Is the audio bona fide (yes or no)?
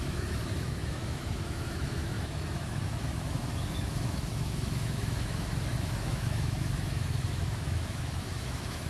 no